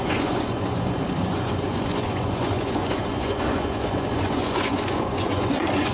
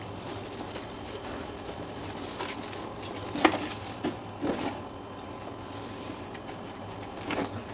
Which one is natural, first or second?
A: second